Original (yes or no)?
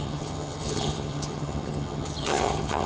no